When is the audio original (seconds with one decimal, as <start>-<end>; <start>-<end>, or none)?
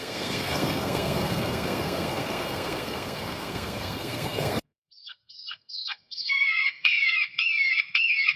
none